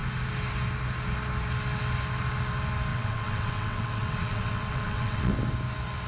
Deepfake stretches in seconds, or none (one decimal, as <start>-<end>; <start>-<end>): 2.9-5.3